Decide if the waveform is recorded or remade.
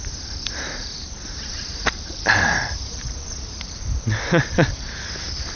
remade